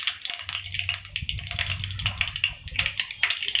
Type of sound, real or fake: real